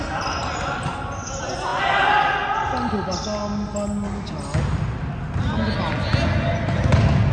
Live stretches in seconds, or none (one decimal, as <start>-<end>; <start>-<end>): 0.0-7.3